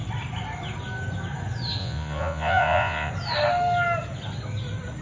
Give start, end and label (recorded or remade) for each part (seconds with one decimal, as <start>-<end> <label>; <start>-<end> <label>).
0.0-1.8 recorded; 1.8-3.1 remade; 3.1-5.0 recorded